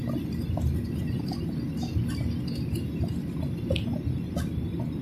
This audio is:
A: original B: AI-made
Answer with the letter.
A